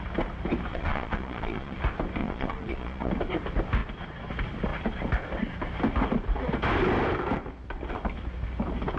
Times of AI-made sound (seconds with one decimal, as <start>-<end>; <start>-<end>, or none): 0.7-1.8; 2.2-3.1